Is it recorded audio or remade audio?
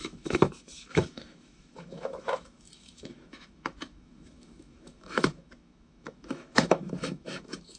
remade